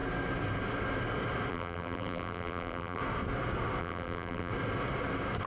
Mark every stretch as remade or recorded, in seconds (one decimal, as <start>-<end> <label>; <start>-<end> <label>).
0.0-1.5 recorded; 1.5-3.0 remade; 3.0-3.8 recorded; 3.8-4.5 remade; 4.5-5.5 recorded